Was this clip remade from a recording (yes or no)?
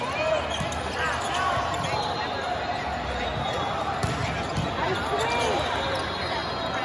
no